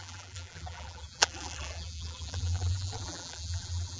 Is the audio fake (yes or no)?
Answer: yes